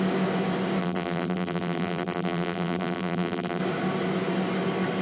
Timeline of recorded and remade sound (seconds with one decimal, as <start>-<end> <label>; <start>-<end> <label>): 0.0-0.8 recorded; 0.8-3.6 remade; 3.6-5.0 recorded